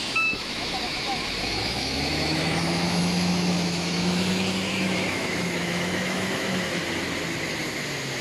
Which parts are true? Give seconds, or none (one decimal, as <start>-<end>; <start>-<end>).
6.8-8.2